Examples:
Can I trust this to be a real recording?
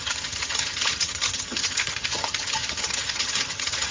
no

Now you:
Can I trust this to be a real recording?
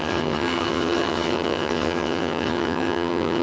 no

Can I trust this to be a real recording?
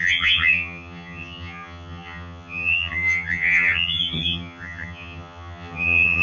no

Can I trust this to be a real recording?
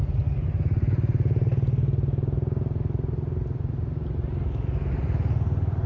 yes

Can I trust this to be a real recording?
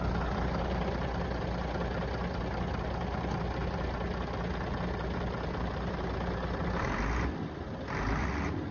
yes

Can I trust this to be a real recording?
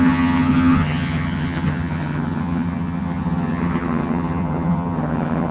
no